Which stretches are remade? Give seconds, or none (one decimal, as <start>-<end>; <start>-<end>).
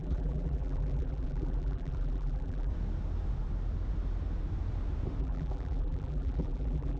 0.0-2.7; 5.2-7.0